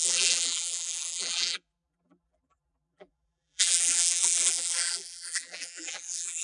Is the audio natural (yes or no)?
no